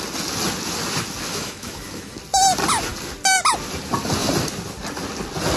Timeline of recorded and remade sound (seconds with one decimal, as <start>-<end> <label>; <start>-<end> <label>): 0.0-1.3 recorded; 1.3-2.2 remade; 2.2-5.6 recorded